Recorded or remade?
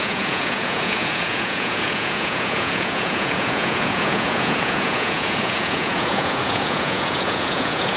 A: remade